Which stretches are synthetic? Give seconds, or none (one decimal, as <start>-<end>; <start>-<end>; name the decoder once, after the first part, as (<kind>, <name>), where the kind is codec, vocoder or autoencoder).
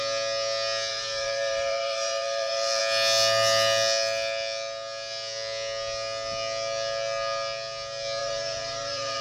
0.9-2.8 (vocoder, BigVGAN v2); 8.2-9.2